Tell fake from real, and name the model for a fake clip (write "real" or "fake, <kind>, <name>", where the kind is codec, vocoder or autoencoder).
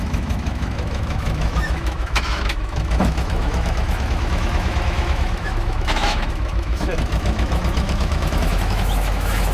fake, autoencoder, DAC-VAE